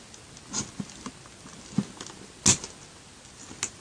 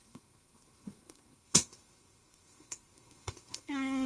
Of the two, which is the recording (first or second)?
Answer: first